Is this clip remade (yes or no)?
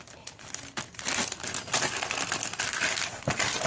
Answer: yes